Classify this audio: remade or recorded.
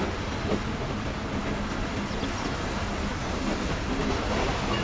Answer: recorded